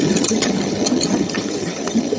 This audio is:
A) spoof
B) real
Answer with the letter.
A